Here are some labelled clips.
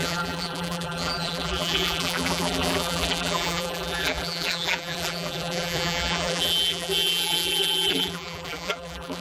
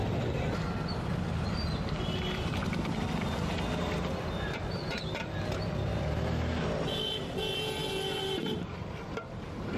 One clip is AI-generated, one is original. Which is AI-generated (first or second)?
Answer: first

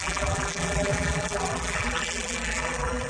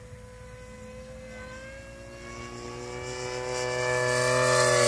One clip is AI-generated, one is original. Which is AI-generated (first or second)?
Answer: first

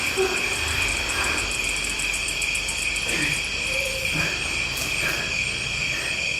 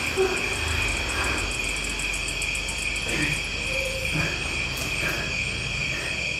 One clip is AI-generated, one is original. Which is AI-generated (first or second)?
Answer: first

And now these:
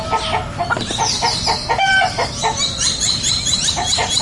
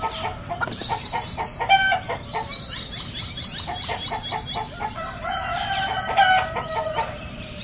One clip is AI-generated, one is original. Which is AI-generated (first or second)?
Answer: second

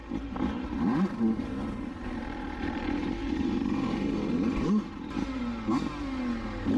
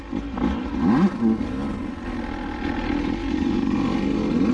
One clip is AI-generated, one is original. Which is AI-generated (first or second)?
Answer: first